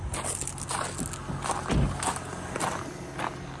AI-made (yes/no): no